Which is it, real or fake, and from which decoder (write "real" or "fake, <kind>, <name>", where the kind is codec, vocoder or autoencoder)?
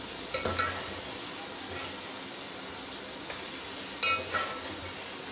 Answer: real